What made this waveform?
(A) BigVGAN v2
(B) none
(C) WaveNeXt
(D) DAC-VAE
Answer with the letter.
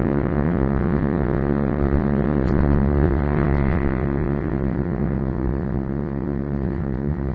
C